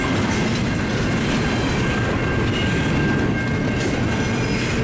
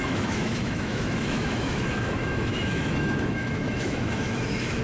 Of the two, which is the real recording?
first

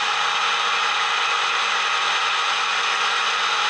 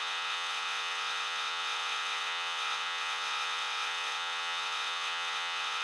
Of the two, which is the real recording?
first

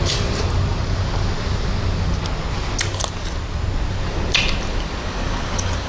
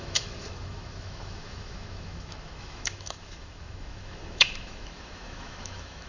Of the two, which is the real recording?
first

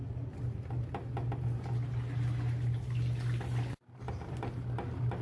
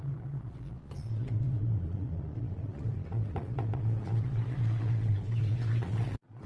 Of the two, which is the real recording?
first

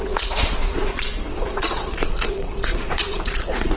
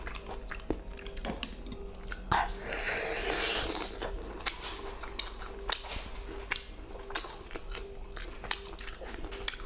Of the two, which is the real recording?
second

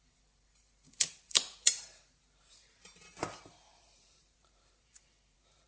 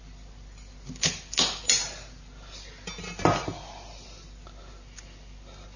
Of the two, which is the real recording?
second